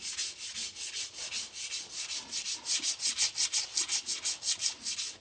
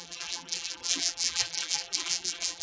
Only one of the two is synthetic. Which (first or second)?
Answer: second